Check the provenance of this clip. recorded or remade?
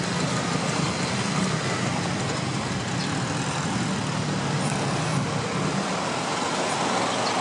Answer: recorded